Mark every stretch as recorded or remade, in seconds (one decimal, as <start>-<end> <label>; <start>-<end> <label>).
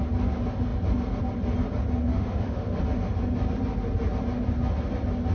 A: 0.0-2.1 recorded; 2.1-2.8 remade; 2.8-5.3 recorded